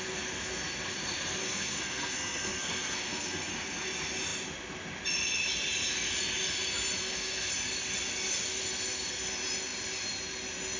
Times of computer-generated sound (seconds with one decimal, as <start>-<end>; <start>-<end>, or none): 1.4-3.5; 7.0-7.5